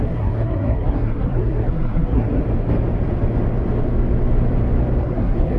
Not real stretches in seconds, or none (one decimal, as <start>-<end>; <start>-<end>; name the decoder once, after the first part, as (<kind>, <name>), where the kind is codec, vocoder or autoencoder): 0.0-2.4 (codec, SNAC); 5.0-5.6